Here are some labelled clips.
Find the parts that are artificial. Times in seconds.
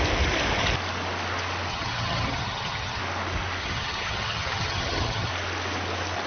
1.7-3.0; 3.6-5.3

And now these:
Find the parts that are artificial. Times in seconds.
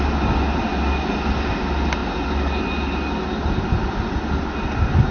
none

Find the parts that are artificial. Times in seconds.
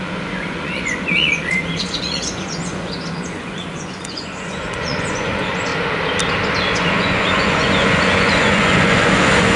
0.0-5.7; 6.7-9.6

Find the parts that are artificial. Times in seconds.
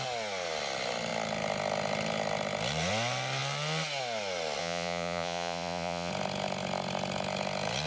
4.6-6.1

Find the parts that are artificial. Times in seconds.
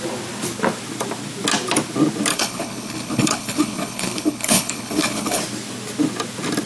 2.3-5.4